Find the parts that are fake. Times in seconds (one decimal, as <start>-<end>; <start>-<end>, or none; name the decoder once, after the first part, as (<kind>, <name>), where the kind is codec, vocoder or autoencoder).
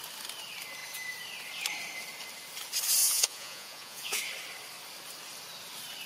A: 3.0-4.2 (vocoder, Vocos)